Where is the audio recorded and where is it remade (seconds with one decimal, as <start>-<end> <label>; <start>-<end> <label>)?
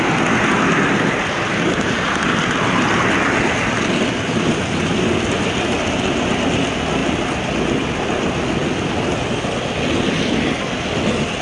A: 0.0-11.4 recorded